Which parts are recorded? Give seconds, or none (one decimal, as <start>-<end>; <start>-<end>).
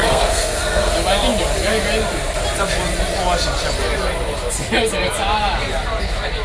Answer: 0.9-6.4